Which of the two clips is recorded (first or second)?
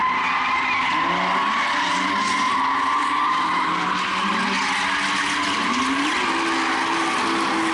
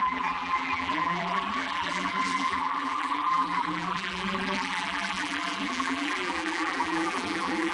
first